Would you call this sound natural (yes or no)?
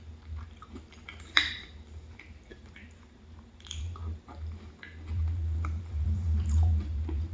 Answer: no